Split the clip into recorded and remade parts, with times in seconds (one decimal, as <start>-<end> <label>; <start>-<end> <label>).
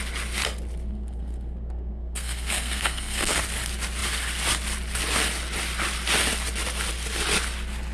0.0-0.9 recorded; 0.9-3.4 remade; 3.4-7.9 recorded